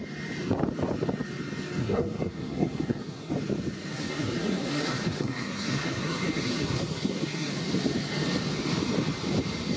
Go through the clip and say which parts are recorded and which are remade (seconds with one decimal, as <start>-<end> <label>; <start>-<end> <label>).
0.0-1.8 recorded; 1.8-3.3 remade; 3.3-3.9 recorded; 3.9-7.5 remade; 7.5-9.8 recorded